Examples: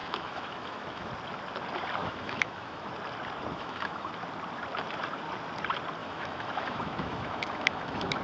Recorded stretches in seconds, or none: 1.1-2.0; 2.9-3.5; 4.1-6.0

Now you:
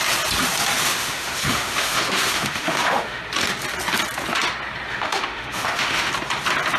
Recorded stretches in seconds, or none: 0.0-0.9; 3.2-4.9; 6.1-6.8

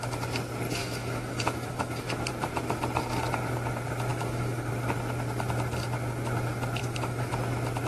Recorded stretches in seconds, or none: 0.0-0.8; 2.3-4.1; 4.7-6.8; 7.3-7.9

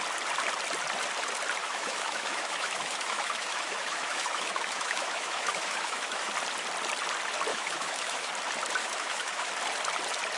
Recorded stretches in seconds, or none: 0.0-1.6; 6.3-7.5; 8.3-8.8; 9.5-10.4